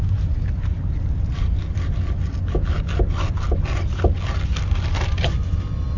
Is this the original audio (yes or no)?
yes